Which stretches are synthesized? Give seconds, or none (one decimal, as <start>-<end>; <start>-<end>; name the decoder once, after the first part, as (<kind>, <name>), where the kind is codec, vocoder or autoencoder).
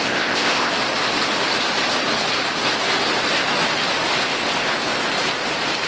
0.0-0.7 (codec, ZipCodec); 4.2-4.7